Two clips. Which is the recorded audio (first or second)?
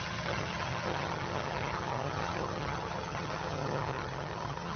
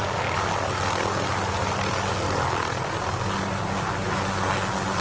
second